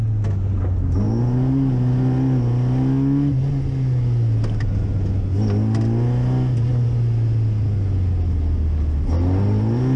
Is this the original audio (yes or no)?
yes